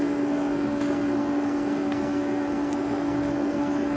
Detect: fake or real fake